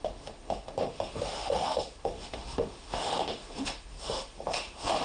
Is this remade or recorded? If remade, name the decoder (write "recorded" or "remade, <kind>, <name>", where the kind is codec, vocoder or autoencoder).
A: remade, autoencoder, DAC-VAE